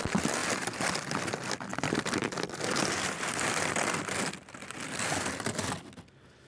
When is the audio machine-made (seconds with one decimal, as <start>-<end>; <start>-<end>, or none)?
0.4-0.9